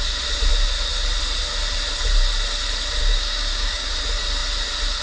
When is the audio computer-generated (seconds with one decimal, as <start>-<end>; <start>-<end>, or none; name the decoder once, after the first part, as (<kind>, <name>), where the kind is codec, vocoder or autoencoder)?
3.0-3.9 (codec, DAC)